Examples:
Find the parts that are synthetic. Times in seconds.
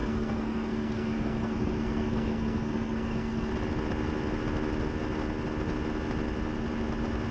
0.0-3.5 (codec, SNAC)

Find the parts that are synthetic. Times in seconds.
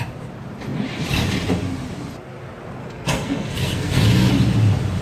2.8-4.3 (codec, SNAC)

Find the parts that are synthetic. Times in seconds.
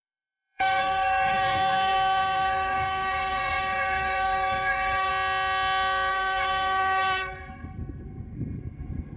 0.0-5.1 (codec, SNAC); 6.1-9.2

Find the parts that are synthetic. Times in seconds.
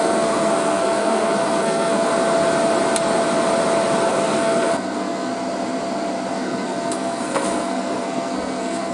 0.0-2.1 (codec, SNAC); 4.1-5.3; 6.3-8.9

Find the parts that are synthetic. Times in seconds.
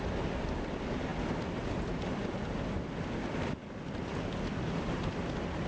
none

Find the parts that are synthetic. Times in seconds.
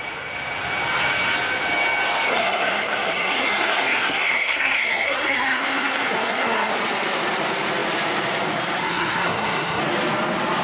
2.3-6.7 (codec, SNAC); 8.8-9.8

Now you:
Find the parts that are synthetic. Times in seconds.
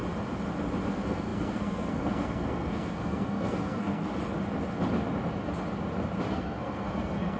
0.9-4.1 (codec, SNAC); 6.3-7.4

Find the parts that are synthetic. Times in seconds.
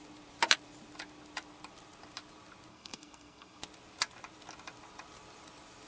2.7-3.6 (codec, SNAC)